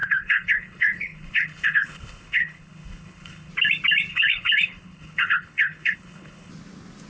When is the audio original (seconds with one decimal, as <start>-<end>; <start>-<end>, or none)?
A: 3.5-4.1; 6.5-7.1